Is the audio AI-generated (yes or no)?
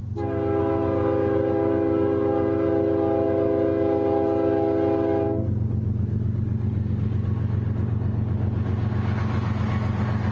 no